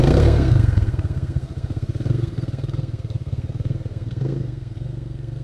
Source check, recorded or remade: remade